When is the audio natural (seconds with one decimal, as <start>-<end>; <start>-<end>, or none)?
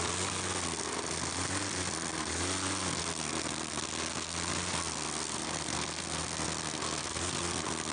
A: 0.0-7.9